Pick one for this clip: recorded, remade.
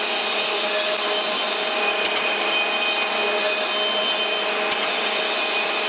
recorded